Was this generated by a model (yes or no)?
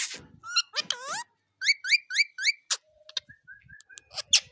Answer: no